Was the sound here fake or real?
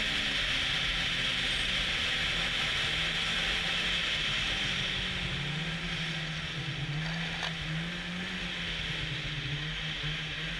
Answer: real